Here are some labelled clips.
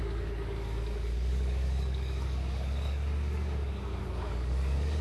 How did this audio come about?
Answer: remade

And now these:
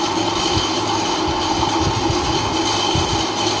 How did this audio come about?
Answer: recorded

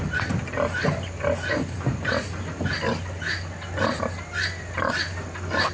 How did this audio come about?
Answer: recorded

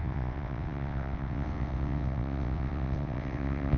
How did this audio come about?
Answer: remade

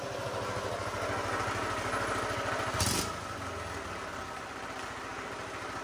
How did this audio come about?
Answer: recorded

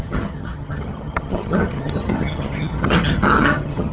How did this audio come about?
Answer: remade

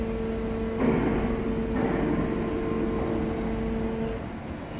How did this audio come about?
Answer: recorded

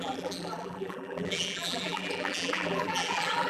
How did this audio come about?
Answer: remade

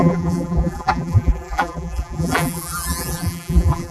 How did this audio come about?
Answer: remade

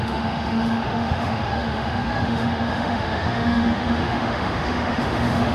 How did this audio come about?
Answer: remade